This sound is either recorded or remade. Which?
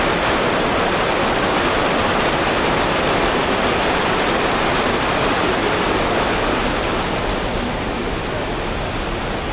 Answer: recorded